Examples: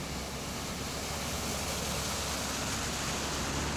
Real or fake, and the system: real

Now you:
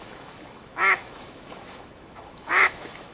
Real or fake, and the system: fake, autoencoder, DAC-VAE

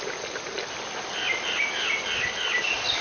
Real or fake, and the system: real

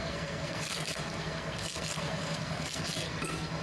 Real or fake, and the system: fake, codec, SNAC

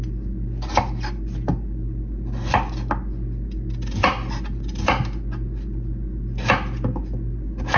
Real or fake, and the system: real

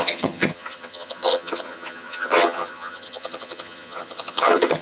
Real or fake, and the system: fake, vocoder, HiFi-GAN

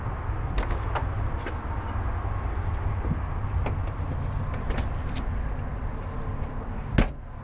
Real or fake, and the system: real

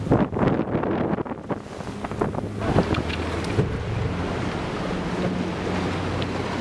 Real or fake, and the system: real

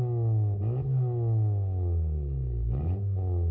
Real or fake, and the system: fake, autoencoder, DAC-VAE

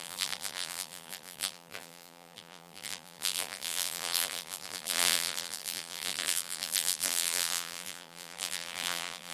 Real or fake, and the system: fake, vocoder, BigVGAN v2